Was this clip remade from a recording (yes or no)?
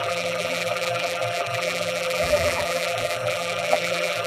yes